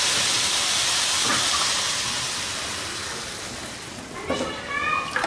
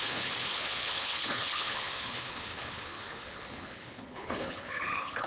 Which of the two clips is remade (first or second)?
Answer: second